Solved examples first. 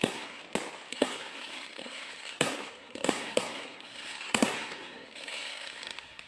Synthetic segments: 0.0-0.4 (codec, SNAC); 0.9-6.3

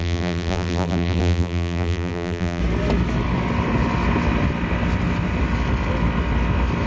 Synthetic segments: 0.0-2.6 (vocoder, BigVGAN v2)

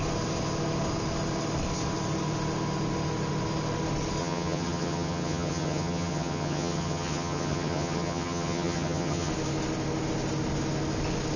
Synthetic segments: 4.2-9.3 (vocoder, HiFi-GAN)